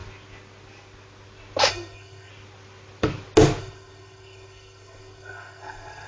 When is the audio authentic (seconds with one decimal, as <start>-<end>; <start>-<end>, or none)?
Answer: 0.0-1.7; 2.3-3.6